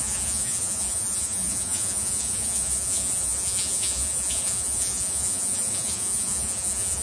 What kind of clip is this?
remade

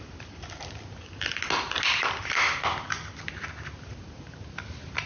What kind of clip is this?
recorded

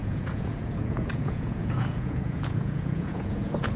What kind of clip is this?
remade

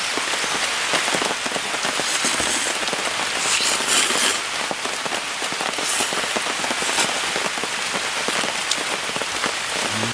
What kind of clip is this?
recorded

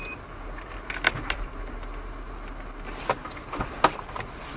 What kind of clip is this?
recorded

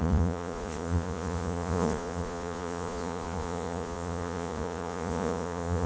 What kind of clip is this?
remade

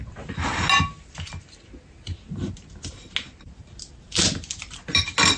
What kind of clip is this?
recorded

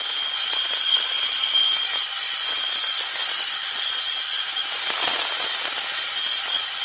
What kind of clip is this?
recorded